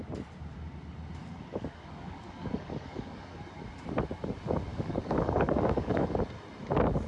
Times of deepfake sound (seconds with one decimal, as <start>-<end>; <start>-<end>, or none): 1.2-3.4; 4.7-6.2